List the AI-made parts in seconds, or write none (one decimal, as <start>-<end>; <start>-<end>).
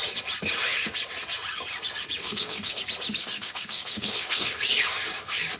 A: 2.2-2.8; 3.2-4.6